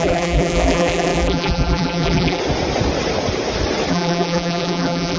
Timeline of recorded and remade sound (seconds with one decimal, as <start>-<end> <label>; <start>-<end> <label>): 0.0-2.4 remade; 2.4-3.9 recorded; 3.9-5.2 remade